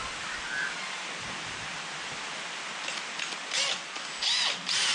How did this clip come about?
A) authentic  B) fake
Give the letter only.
A